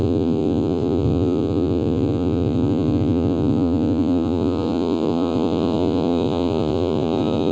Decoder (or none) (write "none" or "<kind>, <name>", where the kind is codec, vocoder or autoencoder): vocoder, Vocos